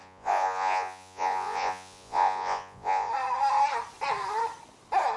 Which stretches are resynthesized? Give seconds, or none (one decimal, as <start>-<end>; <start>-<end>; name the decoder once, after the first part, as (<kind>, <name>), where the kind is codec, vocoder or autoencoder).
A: 0.0-3.1 (vocoder, Vocos)